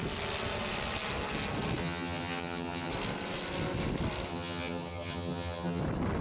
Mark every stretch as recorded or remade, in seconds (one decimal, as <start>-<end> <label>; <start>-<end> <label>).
0.0-1.8 recorded; 1.8-2.9 remade; 2.9-4.3 recorded; 4.3-5.8 remade; 5.8-6.2 recorded